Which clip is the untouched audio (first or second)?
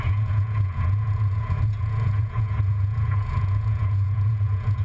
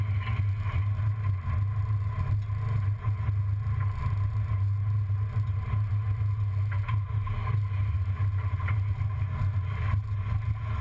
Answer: second